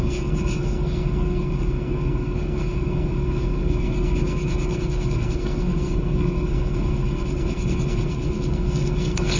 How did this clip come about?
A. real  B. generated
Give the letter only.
B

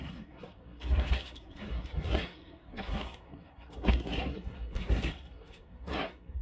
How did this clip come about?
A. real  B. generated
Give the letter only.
B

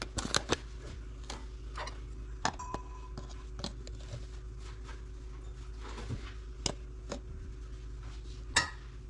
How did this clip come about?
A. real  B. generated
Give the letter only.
A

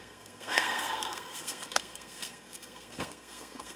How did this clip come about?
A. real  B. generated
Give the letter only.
B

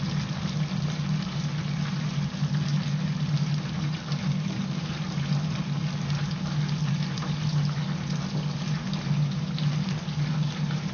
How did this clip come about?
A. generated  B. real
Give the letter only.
B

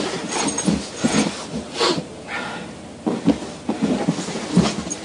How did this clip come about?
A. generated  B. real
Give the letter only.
B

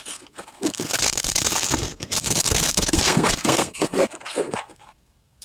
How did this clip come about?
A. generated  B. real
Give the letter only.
A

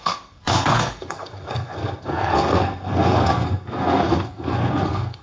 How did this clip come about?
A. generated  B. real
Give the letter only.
A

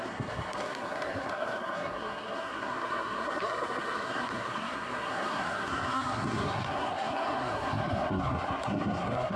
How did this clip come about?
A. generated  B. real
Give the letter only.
A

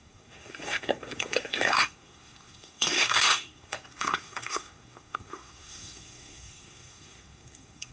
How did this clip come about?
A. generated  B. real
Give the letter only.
A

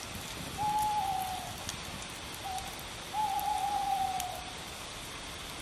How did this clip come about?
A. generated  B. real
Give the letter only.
B